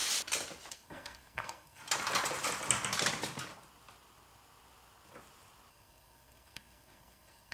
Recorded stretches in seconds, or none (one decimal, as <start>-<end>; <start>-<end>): 0.0-0.7; 1.8-5.7